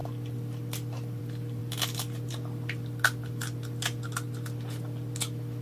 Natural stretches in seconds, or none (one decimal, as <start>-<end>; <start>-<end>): 0.0-5.6